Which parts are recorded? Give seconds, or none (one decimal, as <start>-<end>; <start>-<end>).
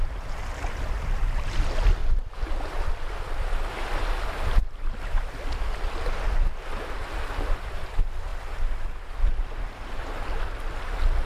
0.0-2.0; 5.0-11.3